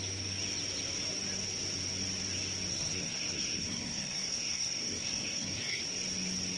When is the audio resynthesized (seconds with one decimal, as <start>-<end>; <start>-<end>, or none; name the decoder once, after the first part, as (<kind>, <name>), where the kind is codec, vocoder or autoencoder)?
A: 2.7-5.8 (codec, SNAC)